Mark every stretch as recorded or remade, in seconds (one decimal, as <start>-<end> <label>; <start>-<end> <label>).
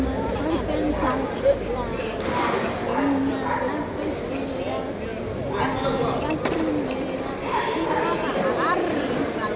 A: 0.0-9.6 recorded